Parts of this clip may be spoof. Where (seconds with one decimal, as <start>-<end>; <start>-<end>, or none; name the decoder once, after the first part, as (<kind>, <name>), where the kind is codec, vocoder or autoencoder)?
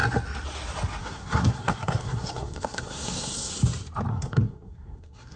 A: 1.0-3.5 (codec, SNAC); 4.1-5.4